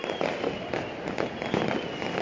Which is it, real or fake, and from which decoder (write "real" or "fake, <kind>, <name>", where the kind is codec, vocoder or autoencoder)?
real